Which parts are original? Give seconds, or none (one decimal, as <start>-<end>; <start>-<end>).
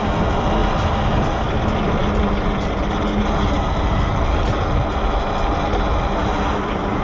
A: 0.0-7.0